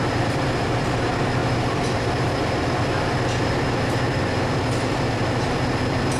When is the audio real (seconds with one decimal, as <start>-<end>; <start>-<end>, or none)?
none